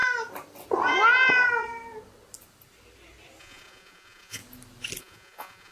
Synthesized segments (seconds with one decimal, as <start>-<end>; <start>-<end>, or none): 3.4-4.4; 5.0-5.7